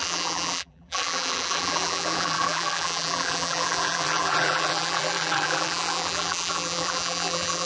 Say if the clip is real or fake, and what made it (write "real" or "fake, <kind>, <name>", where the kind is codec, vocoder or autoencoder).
fake, vocoder, BigVGAN v2